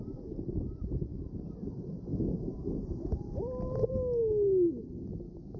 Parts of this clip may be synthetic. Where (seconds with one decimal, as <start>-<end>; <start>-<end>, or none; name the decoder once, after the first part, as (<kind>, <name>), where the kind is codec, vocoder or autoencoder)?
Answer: none